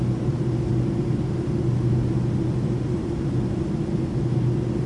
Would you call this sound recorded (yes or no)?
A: yes